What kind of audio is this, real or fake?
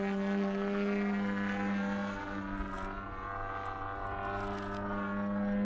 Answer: real